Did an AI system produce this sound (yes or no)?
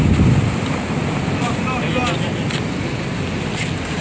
no